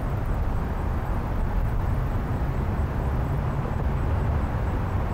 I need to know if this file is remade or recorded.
recorded